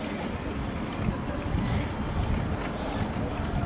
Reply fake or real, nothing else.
real